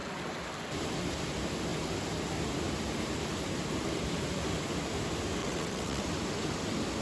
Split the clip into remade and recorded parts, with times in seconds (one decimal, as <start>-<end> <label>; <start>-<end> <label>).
0.0-5.4 recorded; 5.4-6.0 remade; 6.0-7.0 recorded